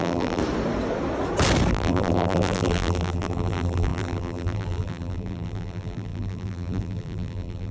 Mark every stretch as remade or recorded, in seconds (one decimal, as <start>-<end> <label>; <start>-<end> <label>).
0.0-0.4 remade; 0.4-1.7 recorded; 1.7-7.7 remade